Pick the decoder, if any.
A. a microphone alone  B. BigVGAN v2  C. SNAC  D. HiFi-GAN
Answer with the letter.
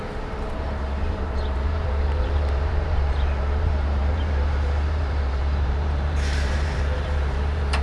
B